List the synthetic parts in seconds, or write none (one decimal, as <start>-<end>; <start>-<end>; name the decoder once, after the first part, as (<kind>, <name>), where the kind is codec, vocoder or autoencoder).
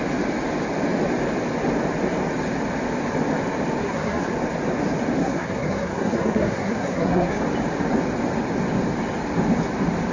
3.8-4.3 (codec, SNAC); 5.2-7.4